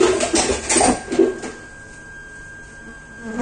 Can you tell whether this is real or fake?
real